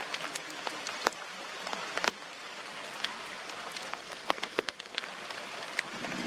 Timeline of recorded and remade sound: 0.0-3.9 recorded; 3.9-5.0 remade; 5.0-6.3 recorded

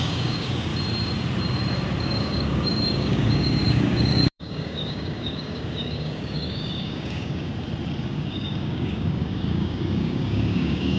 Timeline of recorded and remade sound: 0.0-0.7 remade; 0.7-2.0 recorded; 2.0-7.5 remade; 7.5-8.0 recorded; 8.0-11.0 remade

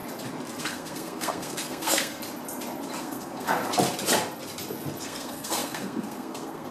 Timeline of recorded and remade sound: 0.0-0.6 recorded; 0.6-2.2 remade; 2.2-3.0 recorded; 3.0-3.6 remade; 3.6-5.0 recorded; 5.0-6.7 remade

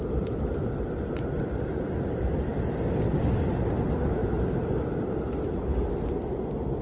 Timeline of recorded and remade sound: 0.0-6.8 recorded

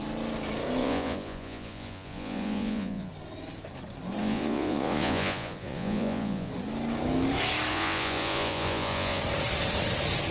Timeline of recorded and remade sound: 0.0-0.8 recorded; 0.8-3.1 remade; 3.1-4.2 recorded; 4.2-6.5 remade; 6.5-7.7 recorded; 7.7-9.2 remade; 9.2-10.3 recorded

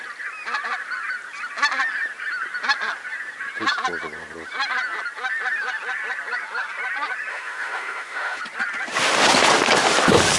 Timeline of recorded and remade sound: 0.0-7.3 recorded; 7.3-8.4 remade; 8.4-10.4 recorded

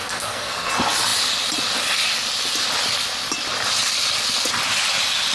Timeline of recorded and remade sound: 0.0-0.7 remade; 0.7-5.3 recorded